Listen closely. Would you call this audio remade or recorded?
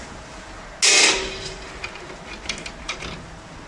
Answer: recorded